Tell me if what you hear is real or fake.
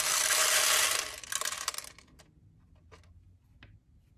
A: real